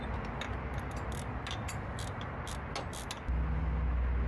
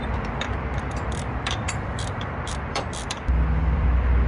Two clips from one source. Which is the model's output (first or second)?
second